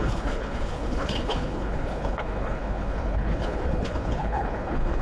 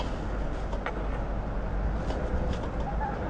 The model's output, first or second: first